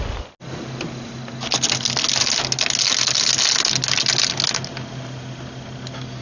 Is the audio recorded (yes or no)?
yes